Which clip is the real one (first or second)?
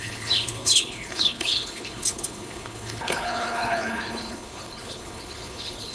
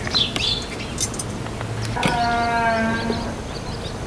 second